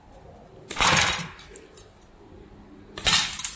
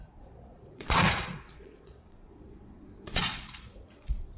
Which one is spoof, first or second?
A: second